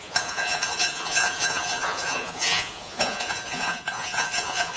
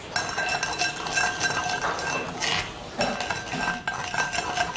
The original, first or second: second